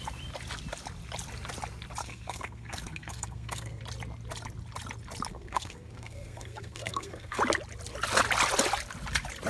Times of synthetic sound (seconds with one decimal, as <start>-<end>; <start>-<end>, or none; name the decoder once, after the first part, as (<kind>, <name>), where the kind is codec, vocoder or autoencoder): 2.0-3.8 (codec, SNAC); 5.3-7.4